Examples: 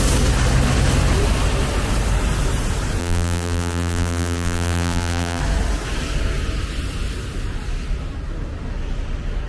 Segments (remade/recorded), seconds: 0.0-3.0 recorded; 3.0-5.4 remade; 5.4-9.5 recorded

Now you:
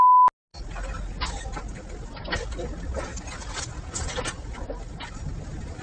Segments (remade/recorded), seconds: 0.0-5.8 recorded

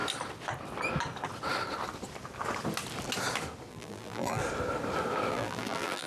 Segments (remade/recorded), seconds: 0.0-3.7 recorded; 3.7-4.4 remade; 4.4-5.3 recorded; 5.3-6.1 remade